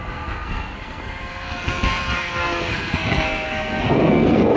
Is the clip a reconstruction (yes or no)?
yes